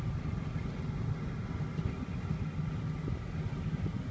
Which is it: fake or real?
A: real